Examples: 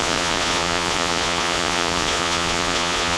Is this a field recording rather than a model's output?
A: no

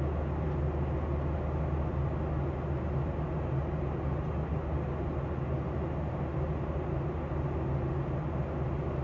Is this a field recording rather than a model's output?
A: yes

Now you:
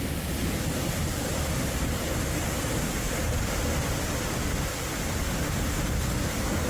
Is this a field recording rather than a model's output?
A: yes